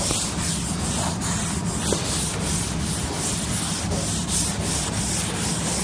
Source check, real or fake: real